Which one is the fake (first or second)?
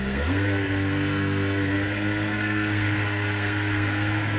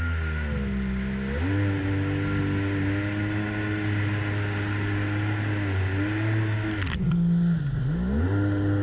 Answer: first